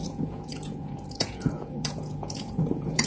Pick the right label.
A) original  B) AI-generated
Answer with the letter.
B